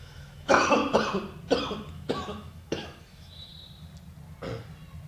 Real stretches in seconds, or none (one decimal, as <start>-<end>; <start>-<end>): 0.8-1.9; 3.5-5.1